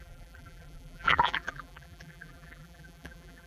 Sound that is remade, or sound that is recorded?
remade